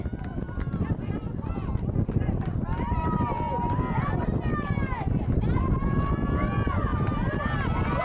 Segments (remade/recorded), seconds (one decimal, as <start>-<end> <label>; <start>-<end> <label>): 0.0-8.0 recorded